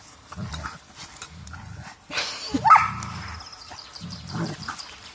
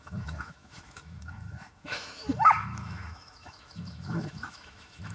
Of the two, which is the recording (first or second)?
first